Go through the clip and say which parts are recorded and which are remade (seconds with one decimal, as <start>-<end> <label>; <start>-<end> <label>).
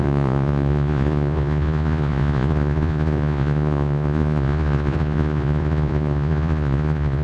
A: 0.0-7.2 remade